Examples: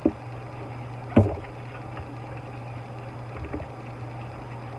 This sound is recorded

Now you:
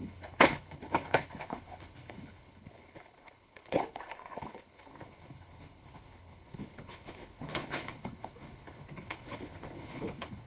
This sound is remade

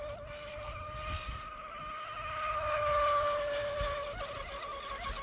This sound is recorded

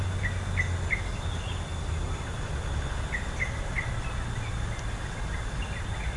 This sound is recorded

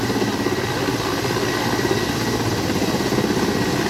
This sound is recorded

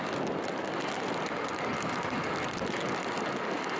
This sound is recorded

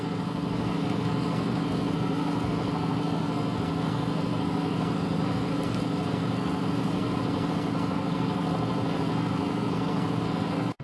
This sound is remade